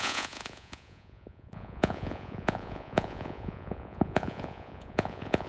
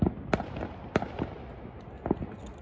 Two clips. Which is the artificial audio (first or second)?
first